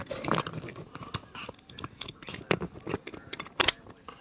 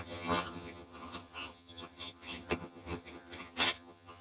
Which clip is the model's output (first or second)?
second